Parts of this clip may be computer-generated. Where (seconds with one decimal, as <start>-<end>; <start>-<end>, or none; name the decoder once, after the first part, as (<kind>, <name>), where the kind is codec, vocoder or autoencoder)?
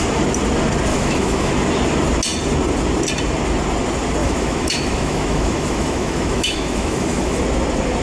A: 0.9-1.5 (autoencoder, DAC-VAE); 4.2-7.4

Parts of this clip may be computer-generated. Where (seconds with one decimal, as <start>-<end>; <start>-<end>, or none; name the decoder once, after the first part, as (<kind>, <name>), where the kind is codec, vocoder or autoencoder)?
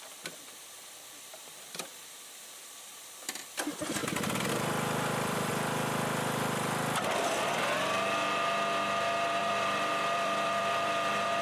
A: 0.0-4.0 (vocoder, BigVGAN v2); 4.5-5.5; 9.4-11.4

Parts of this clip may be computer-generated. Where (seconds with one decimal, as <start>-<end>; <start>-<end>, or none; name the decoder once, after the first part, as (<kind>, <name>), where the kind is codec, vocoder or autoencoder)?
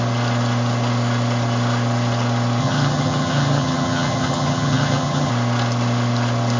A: 2.6-5.3 (vocoder, HiFi-GAN)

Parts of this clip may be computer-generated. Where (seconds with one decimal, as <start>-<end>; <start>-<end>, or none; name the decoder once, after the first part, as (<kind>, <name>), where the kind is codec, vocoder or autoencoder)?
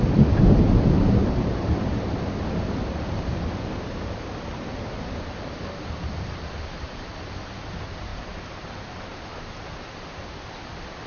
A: 1.2-2.2 (vocoder, BigVGAN v2); 8.1-8.9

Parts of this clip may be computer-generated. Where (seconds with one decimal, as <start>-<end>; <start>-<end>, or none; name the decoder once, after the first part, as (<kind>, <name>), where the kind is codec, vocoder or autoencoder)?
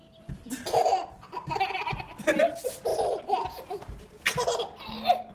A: 0.0-1.1 (vocoder, BigVGAN v2)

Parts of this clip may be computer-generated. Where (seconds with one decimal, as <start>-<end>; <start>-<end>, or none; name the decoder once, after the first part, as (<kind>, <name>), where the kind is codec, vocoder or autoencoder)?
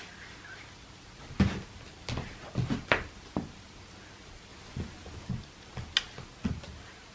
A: none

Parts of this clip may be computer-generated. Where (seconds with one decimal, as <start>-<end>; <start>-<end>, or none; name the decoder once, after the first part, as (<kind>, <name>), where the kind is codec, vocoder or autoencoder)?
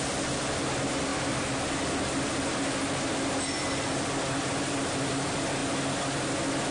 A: none